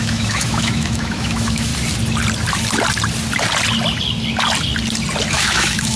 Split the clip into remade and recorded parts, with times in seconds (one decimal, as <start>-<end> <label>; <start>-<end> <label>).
0.0-1.7 remade; 1.7-5.3 recorded; 5.3-6.0 remade